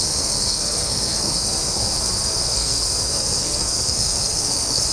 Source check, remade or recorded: remade